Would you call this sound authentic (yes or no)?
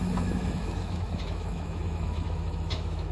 no